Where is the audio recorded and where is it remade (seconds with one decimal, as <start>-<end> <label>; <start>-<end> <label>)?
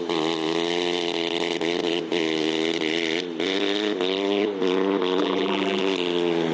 0.0-5.2 recorded; 5.2-5.8 remade; 5.8-6.5 recorded